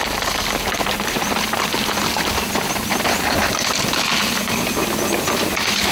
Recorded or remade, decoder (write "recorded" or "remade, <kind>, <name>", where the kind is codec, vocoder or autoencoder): recorded